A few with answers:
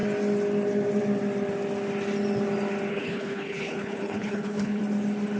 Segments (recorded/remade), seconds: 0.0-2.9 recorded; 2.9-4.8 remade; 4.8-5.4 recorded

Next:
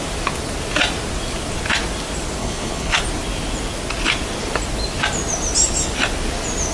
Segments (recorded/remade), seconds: 0.0-2.4 recorded; 2.4-3.0 remade; 3.0-6.7 recorded